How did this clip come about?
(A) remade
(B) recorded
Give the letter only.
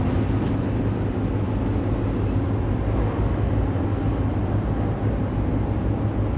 B